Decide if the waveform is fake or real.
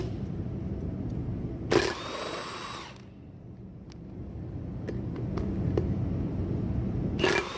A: real